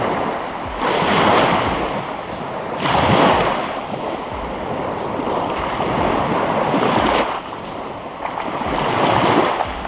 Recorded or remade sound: recorded